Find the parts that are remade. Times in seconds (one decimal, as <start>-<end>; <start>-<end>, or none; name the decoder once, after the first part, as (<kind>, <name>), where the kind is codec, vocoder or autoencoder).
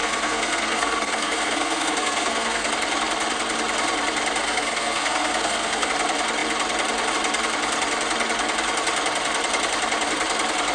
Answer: 0.0-2.7 (codec, SNAC); 4.4-5.9